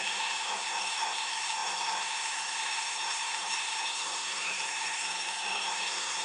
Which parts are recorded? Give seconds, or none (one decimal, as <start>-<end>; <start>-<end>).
none